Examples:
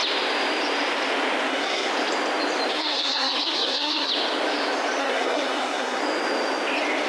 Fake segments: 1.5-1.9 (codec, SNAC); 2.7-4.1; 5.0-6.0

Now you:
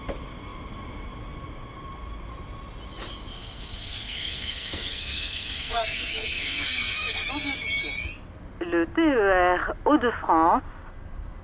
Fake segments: 3.3-7.3 (codec, SNAC)

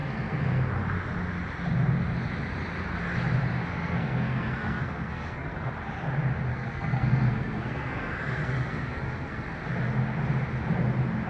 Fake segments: 0.0-0.6 (codec, SNAC); 3.7-5.7; 6.5-9.6

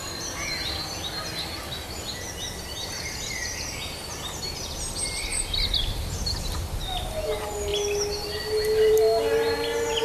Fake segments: none